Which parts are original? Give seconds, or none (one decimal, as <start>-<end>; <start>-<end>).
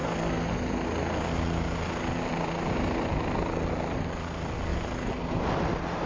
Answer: 0.0-6.1